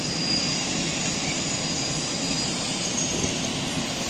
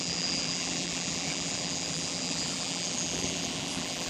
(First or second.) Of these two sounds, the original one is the first